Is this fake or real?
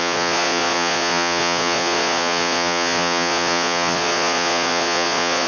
fake